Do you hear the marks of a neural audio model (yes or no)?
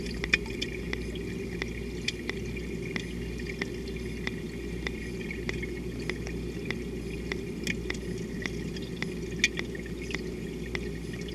no